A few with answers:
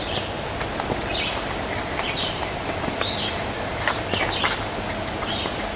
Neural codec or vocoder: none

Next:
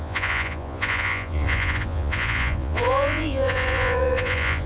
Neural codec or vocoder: vocoder, Vocos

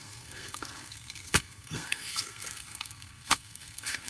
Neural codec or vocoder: codec, SNAC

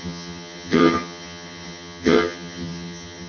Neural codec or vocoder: vocoder, HiFi-GAN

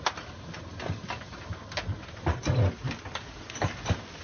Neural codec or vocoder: none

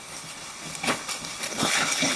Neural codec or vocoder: codec, HILCodec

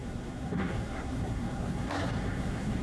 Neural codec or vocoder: codec, SNAC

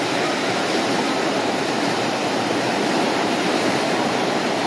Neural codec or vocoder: vocoder, BigVGAN v2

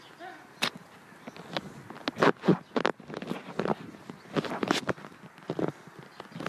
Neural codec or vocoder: none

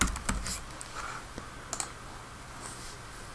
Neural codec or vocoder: none